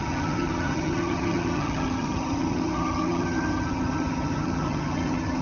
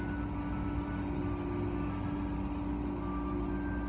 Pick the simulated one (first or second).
first